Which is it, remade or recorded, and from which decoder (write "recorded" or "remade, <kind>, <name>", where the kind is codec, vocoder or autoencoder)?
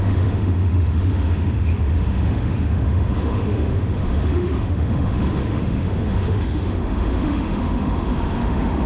remade, autoencoder, DAC-VAE